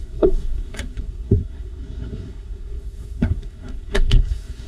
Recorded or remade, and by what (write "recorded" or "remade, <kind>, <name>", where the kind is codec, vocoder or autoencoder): remade, codec, SNAC